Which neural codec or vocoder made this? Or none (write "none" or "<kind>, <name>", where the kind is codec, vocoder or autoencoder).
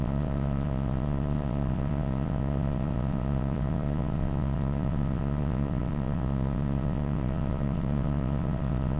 vocoder, WaveNeXt